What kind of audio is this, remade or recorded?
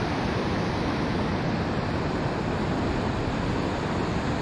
recorded